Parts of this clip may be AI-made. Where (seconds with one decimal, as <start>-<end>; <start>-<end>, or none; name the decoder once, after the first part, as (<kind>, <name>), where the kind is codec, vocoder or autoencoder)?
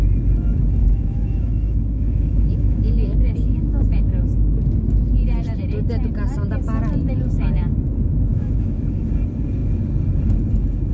0.8-3.9 (autoencoder, DAC-VAE); 8.3-9.1